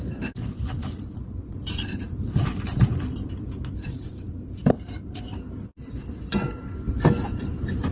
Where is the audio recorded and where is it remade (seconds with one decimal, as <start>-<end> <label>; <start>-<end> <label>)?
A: 0.0-0.8 remade; 0.8-1.7 recorded; 1.7-2.7 remade; 2.7-7.4 recorded; 7.4-7.9 remade